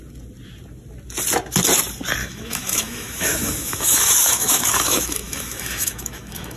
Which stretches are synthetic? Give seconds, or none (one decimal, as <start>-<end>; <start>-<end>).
2.2-6.6